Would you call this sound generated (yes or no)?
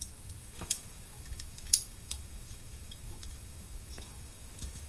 yes